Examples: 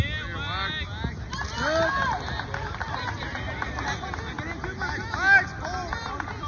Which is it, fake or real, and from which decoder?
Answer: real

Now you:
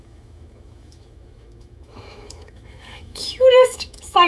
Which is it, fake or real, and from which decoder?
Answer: fake, autoencoder, DAC-VAE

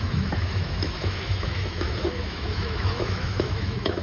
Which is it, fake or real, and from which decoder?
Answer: fake, autoencoder, DAC-VAE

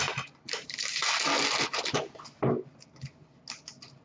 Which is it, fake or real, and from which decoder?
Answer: real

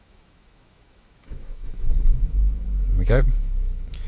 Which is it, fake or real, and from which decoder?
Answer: fake, autoencoder, DAC-VAE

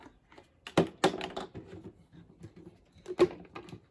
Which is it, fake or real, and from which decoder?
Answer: real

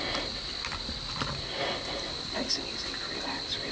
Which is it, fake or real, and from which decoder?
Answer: real